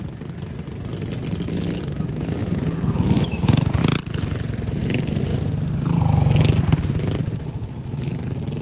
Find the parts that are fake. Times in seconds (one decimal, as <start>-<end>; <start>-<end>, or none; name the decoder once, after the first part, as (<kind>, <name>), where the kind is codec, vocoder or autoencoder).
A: 2.4-3.8 (vocoder, BigVGAN v2)